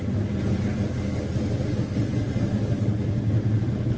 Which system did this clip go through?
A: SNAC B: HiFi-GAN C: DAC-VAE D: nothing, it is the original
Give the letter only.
D